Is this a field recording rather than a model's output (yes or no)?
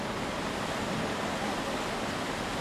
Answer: yes